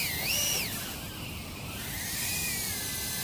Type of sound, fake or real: real